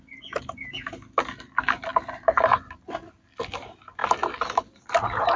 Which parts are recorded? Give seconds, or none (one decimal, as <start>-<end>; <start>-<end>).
0.0-1.9; 3.4-5.4